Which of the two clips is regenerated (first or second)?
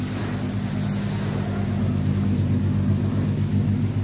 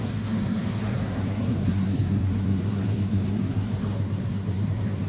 second